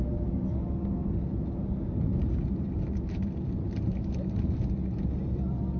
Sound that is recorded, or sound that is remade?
recorded